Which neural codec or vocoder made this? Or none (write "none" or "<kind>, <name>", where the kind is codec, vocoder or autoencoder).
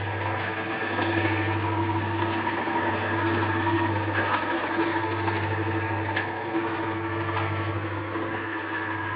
codec, SNAC